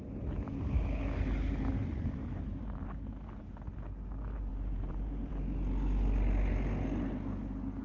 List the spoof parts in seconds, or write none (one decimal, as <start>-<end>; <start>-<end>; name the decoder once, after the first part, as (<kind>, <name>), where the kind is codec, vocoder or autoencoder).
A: 2.2-3.4 (vocoder, BigVGAN v2); 4.5-5.3